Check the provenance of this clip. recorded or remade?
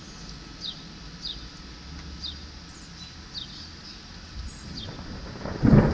recorded